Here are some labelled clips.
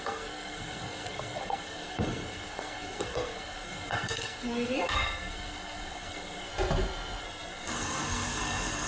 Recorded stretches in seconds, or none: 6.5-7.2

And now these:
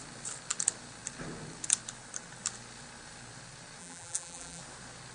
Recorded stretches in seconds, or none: 0.0-3.8; 4.6-5.1